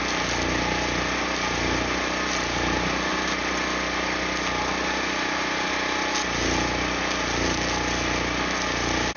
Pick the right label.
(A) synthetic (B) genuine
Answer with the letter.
B